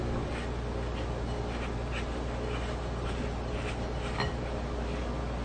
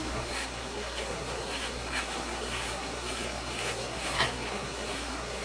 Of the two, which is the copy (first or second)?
second